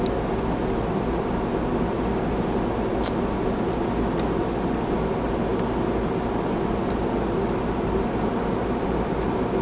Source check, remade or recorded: recorded